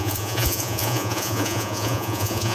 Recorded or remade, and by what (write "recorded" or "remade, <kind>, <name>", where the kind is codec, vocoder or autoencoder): remade, vocoder, Vocos